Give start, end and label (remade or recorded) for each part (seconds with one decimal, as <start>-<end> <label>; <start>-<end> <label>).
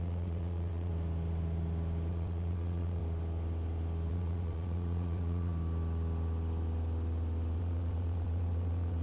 0.0-0.9 remade; 0.9-2.1 recorded; 2.1-3.0 remade; 3.0-4.1 recorded; 4.1-5.5 remade; 5.5-7.6 recorded; 7.6-9.0 remade